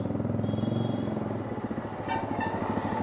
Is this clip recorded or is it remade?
recorded